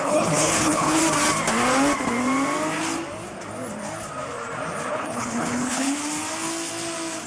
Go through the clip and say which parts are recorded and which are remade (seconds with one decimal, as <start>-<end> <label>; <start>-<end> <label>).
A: 0.0-1.0 remade; 1.0-4.9 recorded; 4.9-6.0 remade; 6.0-7.3 recorded